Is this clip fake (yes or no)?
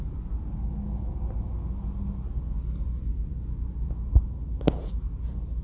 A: no